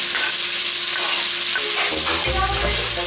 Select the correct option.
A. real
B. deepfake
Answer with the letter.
A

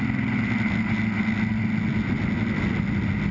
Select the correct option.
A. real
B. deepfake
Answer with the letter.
A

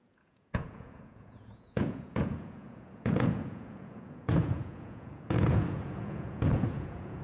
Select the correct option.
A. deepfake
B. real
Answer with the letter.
A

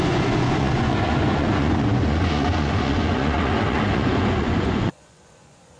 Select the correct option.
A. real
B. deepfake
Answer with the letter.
B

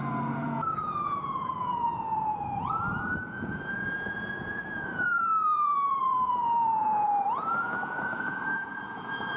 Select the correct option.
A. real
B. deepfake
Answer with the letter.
B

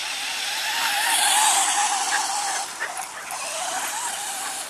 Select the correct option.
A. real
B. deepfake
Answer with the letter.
A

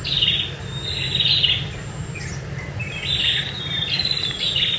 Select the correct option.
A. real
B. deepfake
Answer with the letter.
A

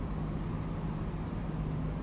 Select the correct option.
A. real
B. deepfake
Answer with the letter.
A